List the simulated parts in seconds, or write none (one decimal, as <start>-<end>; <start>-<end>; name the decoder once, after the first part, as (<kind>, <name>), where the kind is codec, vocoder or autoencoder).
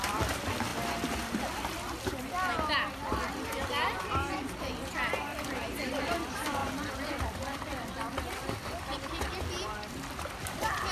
0.0-0.7 (vocoder, BigVGAN v2); 4.6-6.6; 10.4-10.9